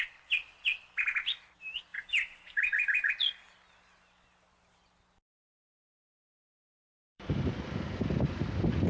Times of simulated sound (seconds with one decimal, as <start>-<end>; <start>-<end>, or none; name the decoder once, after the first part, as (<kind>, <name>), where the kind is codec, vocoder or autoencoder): 1.9-3.1 (vocoder, BigVGAN v2); 6.0-7.5